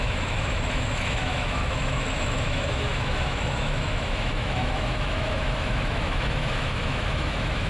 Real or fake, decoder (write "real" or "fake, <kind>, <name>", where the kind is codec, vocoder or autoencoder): fake, autoencoder, DAC-VAE